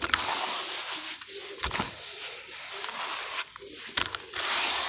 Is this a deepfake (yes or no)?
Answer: no